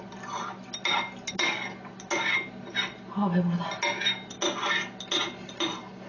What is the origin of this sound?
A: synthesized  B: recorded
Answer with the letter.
B